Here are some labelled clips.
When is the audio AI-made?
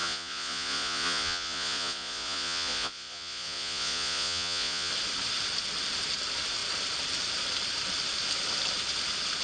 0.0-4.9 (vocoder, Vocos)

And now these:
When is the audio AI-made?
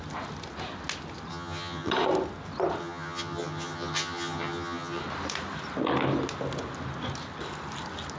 1.3-1.9 (vocoder, HiFi-GAN); 2.8-5.0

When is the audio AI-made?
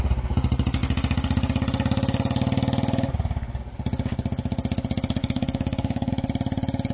5.2-6.1 (codec, DAC)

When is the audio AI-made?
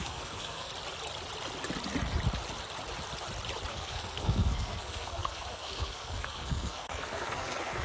0.0-0.7 (codec, SNAC); 3.7-7.8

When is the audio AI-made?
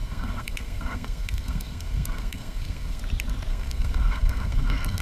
0.0-3.0 (codec, SNAC); 3.5-5.0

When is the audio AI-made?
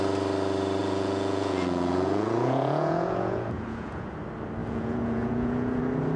0.8-4.1 (vocoder, Vocos); 4.6-5.8